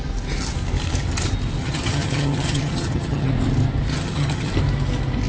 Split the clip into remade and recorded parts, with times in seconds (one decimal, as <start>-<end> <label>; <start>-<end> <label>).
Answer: 0.0-1.6 recorded; 1.6-3.3 remade; 3.3-3.9 recorded; 3.9-4.5 remade; 4.5-5.3 recorded

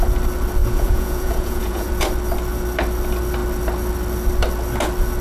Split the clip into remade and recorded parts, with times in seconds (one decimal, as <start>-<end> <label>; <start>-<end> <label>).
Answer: 0.0-0.6 recorded; 0.6-1.9 remade; 1.9-5.2 recorded

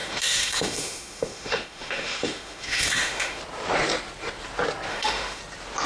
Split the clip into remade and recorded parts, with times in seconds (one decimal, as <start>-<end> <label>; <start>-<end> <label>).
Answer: 0.0-3.4 remade; 3.4-4.9 recorded; 4.9-5.4 remade; 5.4-5.9 recorded

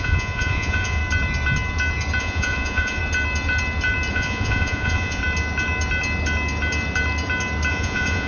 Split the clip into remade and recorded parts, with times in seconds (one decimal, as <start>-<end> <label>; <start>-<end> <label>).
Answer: 0.0-1.0 remade; 1.0-2.2 recorded; 2.2-3.0 remade; 3.0-4.1 recorded; 4.1-5.2 remade; 5.2-7.7 recorded; 7.7-8.3 remade

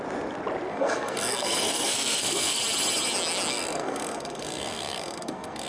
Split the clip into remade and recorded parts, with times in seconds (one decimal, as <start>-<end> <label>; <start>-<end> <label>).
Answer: 0.0-0.7 recorded; 0.7-2.6 remade; 2.6-3.5 recorded; 3.5-5.7 remade

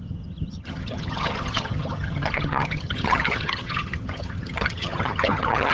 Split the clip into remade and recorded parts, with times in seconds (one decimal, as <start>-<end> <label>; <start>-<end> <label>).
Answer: 0.0-5.7 remade